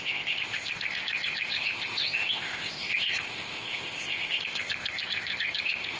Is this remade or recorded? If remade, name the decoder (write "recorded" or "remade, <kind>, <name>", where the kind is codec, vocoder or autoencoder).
remade, codec, ZipCodec